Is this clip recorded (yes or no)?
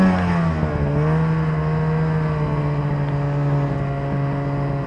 yes